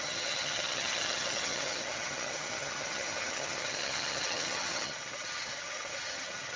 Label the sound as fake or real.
fake